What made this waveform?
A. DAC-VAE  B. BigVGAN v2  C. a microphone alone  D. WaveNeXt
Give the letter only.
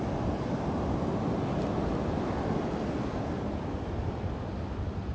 C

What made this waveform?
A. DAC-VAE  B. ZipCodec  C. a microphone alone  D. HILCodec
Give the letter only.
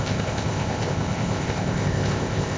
B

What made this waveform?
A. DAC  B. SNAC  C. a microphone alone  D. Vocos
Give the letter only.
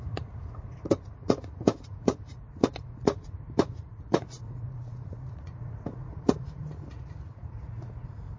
D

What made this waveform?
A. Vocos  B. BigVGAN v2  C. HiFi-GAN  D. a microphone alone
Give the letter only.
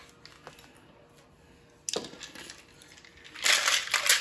D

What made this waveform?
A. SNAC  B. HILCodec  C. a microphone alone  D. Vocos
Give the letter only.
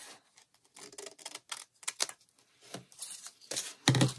C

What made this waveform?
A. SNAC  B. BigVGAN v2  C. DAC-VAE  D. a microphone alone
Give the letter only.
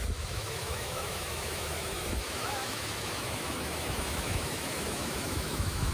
C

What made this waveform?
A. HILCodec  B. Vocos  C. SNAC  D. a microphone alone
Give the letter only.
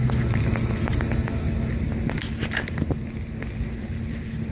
D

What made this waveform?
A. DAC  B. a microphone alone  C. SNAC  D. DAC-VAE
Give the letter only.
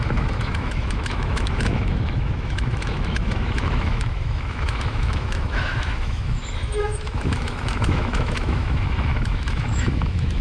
D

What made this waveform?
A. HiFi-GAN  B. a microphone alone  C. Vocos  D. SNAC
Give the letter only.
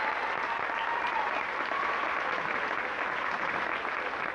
B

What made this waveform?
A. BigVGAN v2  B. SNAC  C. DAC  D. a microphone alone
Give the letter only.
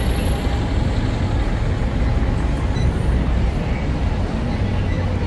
D